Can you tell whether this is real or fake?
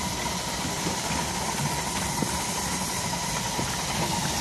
real